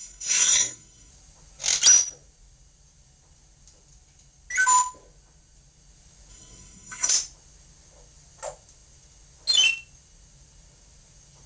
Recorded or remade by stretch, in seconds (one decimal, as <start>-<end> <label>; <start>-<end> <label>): 0.0-1.1 remade; 1.1-6.3 recorded; 6.3-7.1 remade; 7.1-11.5 recorded

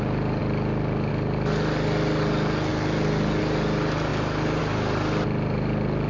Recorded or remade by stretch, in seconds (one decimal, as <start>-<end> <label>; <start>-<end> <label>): 0.0-6.1 recorded

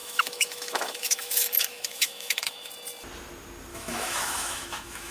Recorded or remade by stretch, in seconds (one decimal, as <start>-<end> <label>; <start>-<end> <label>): 0.0-2.7 remade; 2.7-3.7 recorded; 3.7-5.1 remade

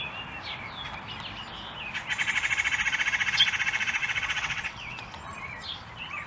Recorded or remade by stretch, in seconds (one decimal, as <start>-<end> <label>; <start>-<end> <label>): 0.0-4.0 recorded; 4.0-5.1 remade; 5.1-6.3 recorded

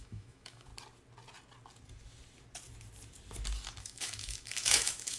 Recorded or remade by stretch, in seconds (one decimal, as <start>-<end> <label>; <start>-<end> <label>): 0.0-0.7 remade; 0.7-3.8 recorded; 3.8-5.2 remade

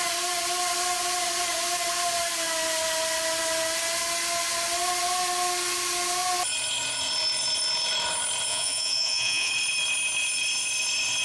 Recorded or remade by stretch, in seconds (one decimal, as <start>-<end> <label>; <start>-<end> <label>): 0.0-8.5 recorded; 8.5-9.5 remade; 9.5-11.2 recorded

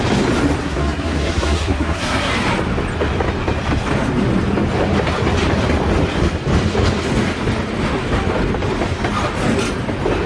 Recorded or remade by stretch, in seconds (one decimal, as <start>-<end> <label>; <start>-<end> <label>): 0.0-0.6 recorded; 0.6-2.3 remade; 2.3-10.3 recorded

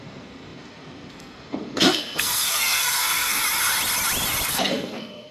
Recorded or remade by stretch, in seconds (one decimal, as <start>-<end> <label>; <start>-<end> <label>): 0.0-3.4 remade; 3.4-4.5 recorded; 4.5-5.3 remade